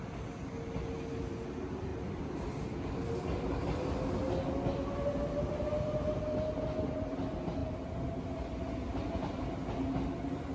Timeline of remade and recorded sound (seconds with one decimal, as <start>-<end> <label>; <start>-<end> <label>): 0.0-10.5 recorded